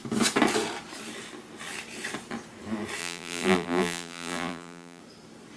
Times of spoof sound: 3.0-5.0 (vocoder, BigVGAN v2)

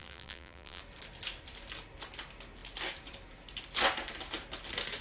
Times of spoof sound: 0.0-0.8 (vocoder, BigVGAN v2)

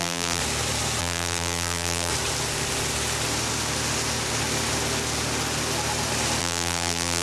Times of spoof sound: 0.0-0.4 (vocoder, BigVGAN v2); 1.0-2.1; 6.4-7.2

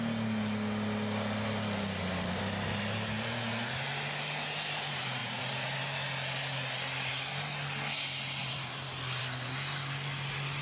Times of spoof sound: 5.2-5.8 (vocoder, BigVGAN v2); 8.4-9.2

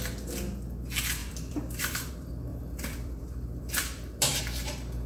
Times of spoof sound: 1.2-2.1 (vocoder, BigVGAN v2); 2.5-4.4

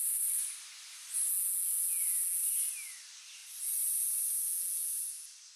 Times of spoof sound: 0.0-1.3 (vocoder, BigVGAN v2); 3.4-4.5

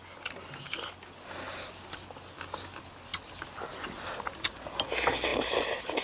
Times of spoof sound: none